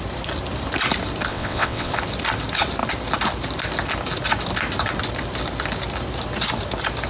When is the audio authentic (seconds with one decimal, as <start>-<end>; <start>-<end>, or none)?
0.0-1.3; 1.9-7.1